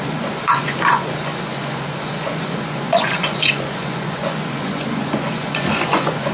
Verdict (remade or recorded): remade